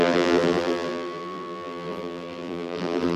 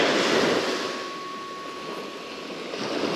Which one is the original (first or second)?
second